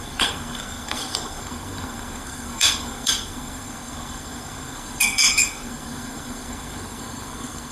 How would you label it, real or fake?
fake